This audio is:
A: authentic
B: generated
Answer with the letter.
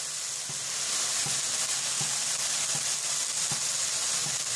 A